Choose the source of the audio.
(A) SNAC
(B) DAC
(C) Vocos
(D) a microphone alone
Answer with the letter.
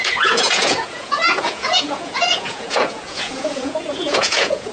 C